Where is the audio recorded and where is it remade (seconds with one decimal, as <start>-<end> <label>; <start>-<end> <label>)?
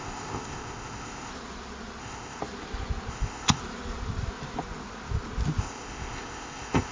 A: 0.0-1.3 remade; 1.3-2.0 recorded; 2.0-2.4 remade; 2.4-3.1 recorded; 3.1-3.6 remade; 3.6-5.6 recorded; 5.6-6.9 remade